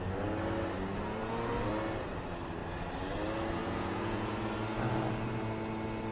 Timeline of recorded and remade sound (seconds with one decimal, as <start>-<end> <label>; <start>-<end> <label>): 0.0-3.6 recorded; 3.6-4.3 remade; 4.3-6.1 recorded